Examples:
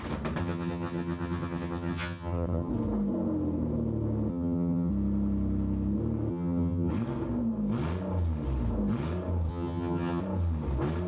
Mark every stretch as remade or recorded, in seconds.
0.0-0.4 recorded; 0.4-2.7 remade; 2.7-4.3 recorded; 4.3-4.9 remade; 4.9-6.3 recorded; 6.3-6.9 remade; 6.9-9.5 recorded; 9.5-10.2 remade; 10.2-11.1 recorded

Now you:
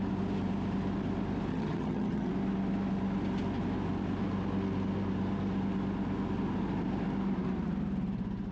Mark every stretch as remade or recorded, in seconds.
0.0-1.5 recorded; 1.5-2.3 remade; 2.3-8.5 recorded

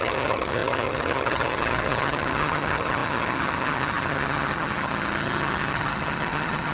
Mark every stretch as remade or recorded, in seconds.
0.0-6.7 remade

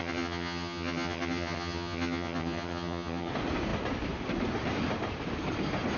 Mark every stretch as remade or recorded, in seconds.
0.0-3.3 remade; 3.3-6.0 recorded